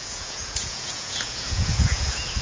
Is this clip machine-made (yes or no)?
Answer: yes